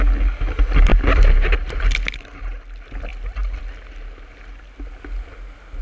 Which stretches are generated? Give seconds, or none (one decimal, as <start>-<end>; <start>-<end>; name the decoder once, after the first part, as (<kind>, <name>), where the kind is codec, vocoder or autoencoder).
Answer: none